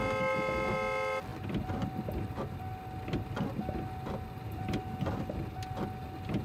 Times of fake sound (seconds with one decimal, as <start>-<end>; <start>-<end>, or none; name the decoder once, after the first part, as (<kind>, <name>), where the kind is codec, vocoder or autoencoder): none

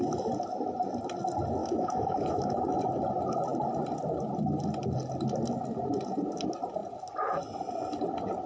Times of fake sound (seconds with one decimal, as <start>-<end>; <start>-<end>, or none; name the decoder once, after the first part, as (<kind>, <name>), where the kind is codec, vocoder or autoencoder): 1.6-2.8 (autoencoder, DAC-VAE)

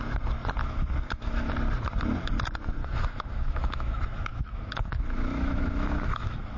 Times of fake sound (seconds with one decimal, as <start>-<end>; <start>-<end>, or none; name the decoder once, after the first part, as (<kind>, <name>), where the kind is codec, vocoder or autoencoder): 0.6-1.5 (autoencoder, DAC-VAE); 2.8-6.6